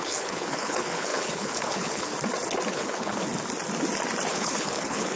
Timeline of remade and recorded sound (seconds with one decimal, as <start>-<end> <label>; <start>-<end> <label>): 0.0-2.1 remade; 2.1-2.7 recorded; 2.7-3.2 remade; 3.2-4.3 recorded; 4.3-5.2 remade